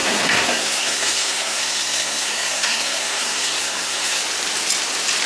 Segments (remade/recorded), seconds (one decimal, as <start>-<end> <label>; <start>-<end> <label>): 0.0-4.2 remade; 4.2-5.3 recorded